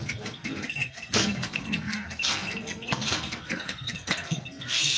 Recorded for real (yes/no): no